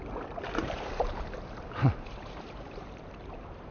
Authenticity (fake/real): fake